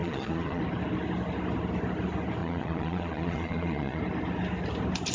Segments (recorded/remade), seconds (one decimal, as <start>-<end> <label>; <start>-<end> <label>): 0.0-0.6 remade; 0.6-2.4 recorded; 2.4-4.0 remade; 4.0-5.1 recorded